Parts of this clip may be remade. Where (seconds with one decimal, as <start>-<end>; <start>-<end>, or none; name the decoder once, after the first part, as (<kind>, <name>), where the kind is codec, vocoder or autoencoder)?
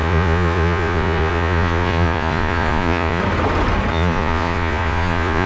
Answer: 0.0-3.2 (vocoder, Vocos); 3.9-5.5